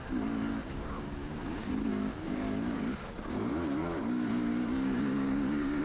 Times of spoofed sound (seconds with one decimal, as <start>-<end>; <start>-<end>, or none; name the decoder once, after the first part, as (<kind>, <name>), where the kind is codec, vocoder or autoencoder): 0.5-3.1 (codec, DAC); 3.5-5.8